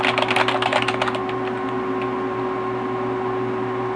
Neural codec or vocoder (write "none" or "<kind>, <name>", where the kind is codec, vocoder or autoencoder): none